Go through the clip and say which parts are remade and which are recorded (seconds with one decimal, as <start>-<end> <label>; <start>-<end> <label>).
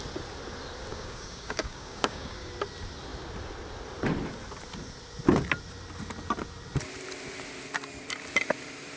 0.0-0.9 recorded; 0.9-2.5 remade; 2.5-9.0 recorded